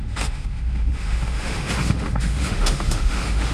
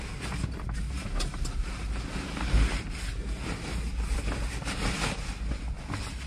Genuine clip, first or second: second